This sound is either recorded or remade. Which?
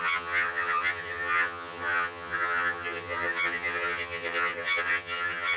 remade